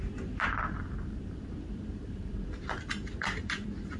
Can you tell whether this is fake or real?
fake